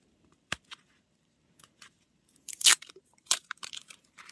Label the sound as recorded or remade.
remade